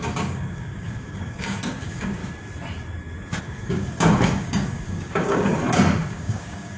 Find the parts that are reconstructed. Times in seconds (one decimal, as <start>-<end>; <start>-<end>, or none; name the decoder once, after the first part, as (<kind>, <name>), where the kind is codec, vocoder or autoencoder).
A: 0.0-2.2 (codec, DAC); 3.4-5.5; 6.1-6.8

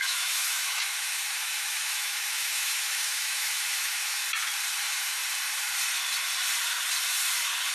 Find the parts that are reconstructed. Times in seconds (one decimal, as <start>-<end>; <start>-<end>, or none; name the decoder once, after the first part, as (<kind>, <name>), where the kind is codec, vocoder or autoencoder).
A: 0.0-4.2 (autoencoder, DAC-VAE); 4.8-5.2

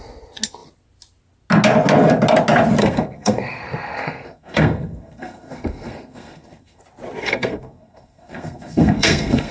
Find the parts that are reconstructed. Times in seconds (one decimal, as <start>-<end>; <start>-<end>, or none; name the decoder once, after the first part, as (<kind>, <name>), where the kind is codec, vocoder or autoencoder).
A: 2.8-6.8 (codec, SNAC); 7.2-9.5

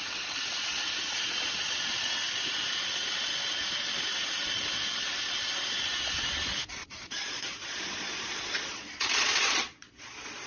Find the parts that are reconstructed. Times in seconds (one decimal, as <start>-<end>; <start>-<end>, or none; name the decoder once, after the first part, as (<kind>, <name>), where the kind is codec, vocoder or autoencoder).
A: 6.8-10.5 (vocoder, Vocos)

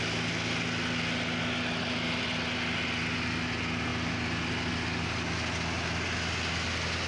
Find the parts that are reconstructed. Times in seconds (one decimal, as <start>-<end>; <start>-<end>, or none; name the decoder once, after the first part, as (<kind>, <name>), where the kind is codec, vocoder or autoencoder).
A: none